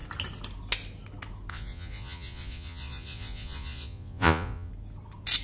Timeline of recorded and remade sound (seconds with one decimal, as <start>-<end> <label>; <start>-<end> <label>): 0.0-1.5 recorded; 1.5-4.7 remade; 4.7-5.4 recorded